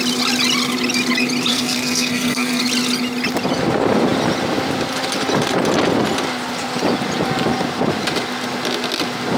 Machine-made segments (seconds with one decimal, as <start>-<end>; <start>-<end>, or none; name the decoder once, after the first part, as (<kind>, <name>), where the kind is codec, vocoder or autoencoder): 1.5-2.6 (codec, SNAC)

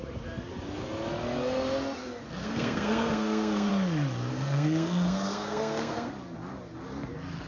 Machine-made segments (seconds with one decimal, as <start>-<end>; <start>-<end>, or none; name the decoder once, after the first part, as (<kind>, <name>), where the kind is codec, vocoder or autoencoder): 2.4-3.7 (codec, SNAC); 4.3-6.1

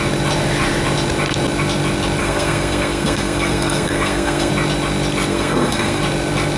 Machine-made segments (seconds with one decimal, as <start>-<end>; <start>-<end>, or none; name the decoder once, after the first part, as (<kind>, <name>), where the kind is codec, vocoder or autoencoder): 2.2-4.5 (codec, SNAC); 5.3-6.0

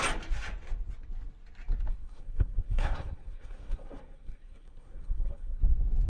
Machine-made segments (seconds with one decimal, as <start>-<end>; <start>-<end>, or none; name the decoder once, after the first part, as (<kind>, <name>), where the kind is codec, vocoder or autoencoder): 1.9-5.6 (codec, SNAC)

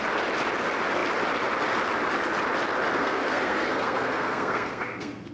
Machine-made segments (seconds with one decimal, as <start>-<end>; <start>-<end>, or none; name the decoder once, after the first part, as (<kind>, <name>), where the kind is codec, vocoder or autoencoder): 3.0-5.3 (codec, SNAC)

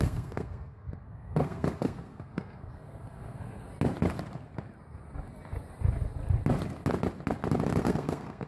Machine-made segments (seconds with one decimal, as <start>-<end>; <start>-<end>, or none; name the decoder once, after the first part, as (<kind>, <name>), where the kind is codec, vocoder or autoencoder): 0.0-3.6 (codec, SNAC); 7.8-8.5

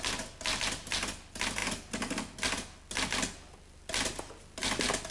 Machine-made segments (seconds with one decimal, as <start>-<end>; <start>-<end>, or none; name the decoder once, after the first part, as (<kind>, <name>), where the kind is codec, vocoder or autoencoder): none

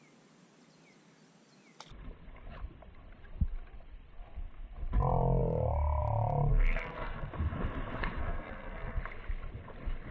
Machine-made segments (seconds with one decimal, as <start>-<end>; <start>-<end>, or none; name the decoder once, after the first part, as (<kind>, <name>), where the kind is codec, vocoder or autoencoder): 6.5-7.3 (codec, SNAC); 8.2-9.0